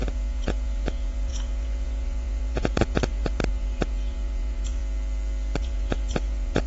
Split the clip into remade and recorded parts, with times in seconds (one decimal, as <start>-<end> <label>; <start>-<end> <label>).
0.0-4.8 remade; 4.8-5.6 recorded; 5.6-6.7 remade